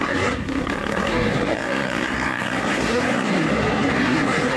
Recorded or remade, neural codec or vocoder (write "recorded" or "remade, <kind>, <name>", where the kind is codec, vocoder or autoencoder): remade, codec, SNAC